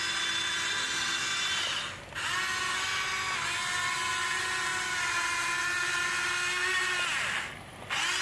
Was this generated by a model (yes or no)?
no